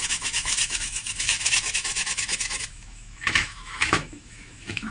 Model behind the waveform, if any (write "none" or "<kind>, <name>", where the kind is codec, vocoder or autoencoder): autoencoder, DAC-VAE